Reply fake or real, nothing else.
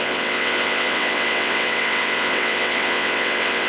fake